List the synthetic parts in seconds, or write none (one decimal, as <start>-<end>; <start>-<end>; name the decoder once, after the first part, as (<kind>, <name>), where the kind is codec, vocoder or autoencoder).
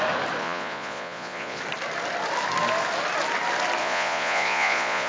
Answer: 0.4-1.6 (vocoder, Vocos); 3.8-5.1